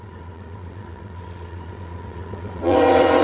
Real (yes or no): no